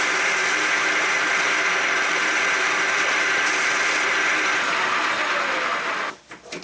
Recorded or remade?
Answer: recorded